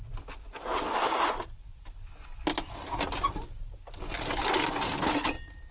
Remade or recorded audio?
recorded